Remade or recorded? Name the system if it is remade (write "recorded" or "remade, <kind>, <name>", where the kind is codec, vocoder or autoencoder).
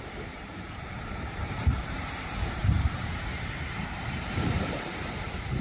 remade, vocoder, BigVGAN v2